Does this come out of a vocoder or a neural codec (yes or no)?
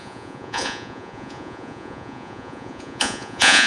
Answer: yes